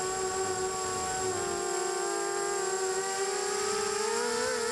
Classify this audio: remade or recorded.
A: recorded